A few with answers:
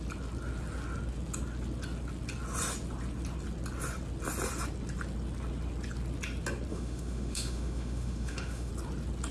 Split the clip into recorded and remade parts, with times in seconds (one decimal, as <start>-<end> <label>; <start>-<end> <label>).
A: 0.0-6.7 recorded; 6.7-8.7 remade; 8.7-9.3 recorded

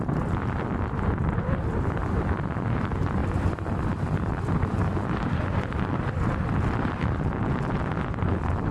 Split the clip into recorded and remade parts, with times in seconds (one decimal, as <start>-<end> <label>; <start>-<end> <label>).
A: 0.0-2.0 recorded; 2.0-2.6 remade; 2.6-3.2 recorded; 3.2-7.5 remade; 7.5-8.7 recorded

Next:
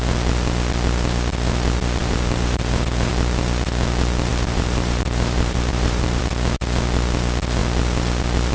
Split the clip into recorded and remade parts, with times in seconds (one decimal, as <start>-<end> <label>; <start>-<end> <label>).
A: 0.0-2.0 recorded; 2.0-3.1 remade; 3.1-4.3 recorded; 4.3-6.2 remade; 6.2-8.5 recorded